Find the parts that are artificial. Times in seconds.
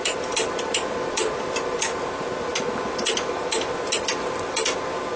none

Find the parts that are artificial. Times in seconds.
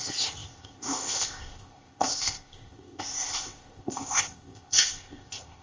0.0-5.6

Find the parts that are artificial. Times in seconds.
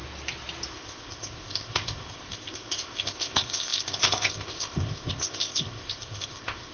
0.7-6.7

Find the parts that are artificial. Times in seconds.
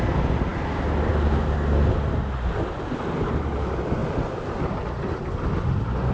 none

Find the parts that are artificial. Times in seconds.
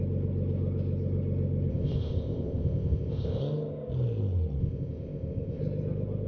1.7-3.4; 4.6-5.6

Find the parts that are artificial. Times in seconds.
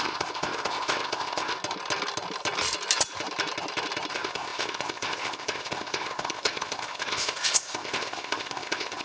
0.0-1.6; 4.1-9.0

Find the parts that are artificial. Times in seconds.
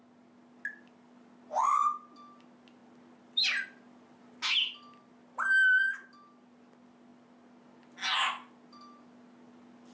none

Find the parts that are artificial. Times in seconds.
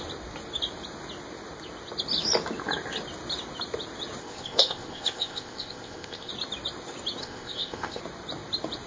4.2-6.3; 7.2-8.0